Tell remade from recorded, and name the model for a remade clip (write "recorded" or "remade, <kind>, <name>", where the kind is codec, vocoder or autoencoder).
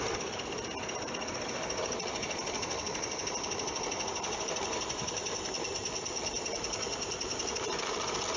remade, vocoder, BigVGAN v2